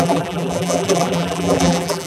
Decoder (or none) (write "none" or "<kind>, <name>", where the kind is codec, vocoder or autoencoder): vocoder, BigVGAN v2